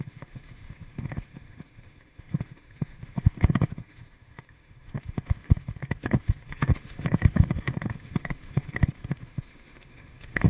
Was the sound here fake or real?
fake